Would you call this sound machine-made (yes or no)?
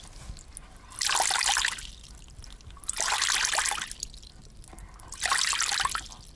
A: no